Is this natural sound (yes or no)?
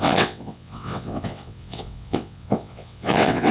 no